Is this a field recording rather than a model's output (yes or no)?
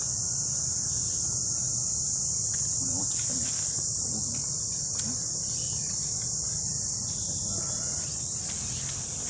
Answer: yes